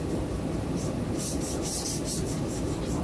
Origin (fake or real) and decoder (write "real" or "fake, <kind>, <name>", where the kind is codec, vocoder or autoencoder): real